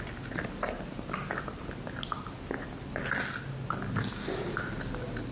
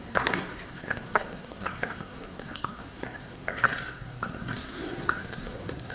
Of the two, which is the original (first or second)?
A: first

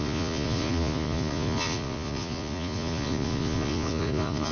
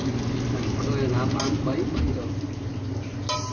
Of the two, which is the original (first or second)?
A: second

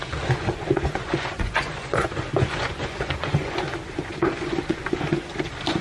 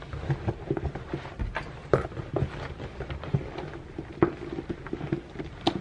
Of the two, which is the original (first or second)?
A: second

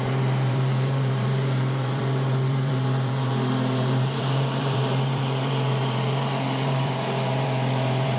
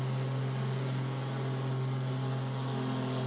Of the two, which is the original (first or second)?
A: second